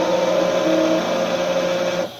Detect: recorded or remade recorded